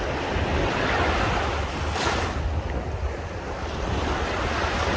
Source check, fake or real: real